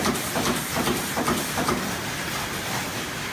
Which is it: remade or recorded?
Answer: recorded